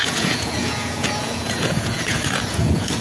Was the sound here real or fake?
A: fake